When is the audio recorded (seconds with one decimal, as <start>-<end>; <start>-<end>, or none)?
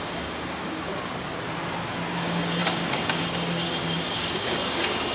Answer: 0.9-2.1